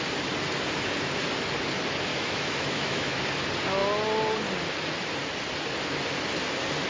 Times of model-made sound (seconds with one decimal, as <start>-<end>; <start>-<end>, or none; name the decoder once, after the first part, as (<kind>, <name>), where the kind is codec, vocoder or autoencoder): 2.1-3.2 (autoencoder, DAC-VAE)